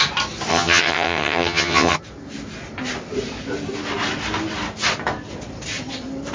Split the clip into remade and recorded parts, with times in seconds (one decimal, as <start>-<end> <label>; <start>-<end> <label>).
0.0-0.5 recorded; 0.5-2.0 remade; 2.0-6.3 recorded